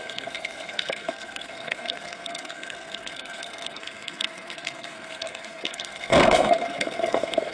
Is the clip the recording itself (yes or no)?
no